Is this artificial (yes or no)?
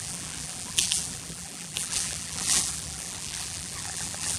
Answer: yes